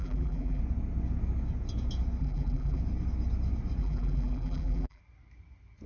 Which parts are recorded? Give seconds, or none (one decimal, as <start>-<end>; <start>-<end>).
0.6-2.2; 2.8-3.8; 5.0-5.9